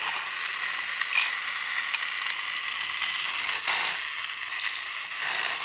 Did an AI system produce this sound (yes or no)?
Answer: no